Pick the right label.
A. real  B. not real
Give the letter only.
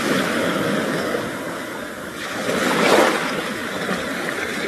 B